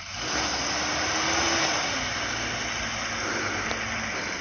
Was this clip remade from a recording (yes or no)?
no